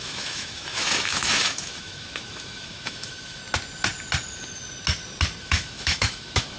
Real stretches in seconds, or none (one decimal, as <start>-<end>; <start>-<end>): 3.4-5.4